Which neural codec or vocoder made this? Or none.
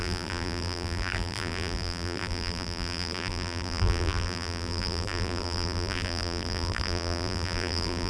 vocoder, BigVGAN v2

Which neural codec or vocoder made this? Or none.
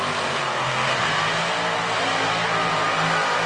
none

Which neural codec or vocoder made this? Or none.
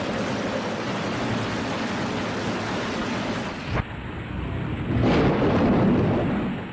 none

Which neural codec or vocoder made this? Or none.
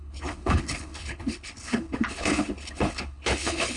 codec, HILCodec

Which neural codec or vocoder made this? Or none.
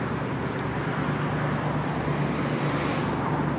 none